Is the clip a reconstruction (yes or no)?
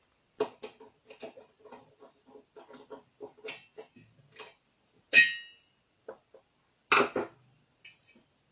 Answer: no